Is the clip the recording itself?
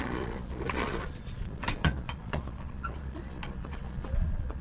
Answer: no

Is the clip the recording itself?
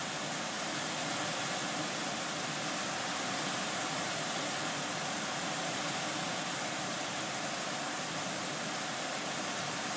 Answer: yes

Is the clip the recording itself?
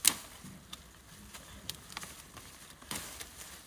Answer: yes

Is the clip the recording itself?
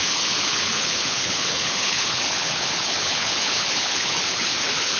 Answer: no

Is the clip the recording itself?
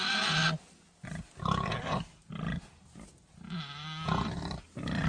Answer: yes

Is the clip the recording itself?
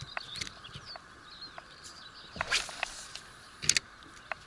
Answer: yes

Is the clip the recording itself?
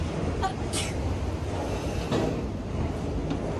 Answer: yes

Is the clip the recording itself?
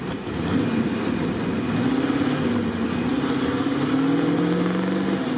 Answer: yes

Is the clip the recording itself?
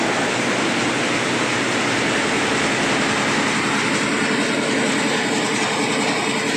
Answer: yes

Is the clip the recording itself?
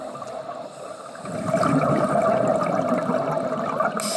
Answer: yes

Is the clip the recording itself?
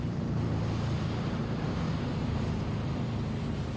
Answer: no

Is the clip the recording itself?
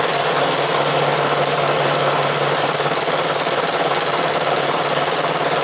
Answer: yes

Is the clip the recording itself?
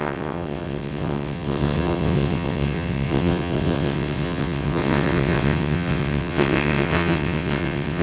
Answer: no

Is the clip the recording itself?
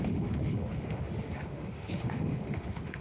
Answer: no